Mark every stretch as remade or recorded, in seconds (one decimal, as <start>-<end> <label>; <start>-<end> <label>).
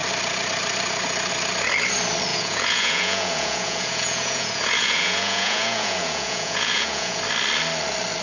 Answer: 0.0-2.3 recorded; 2.3-7.2 remade; 7.2-8.2 recorded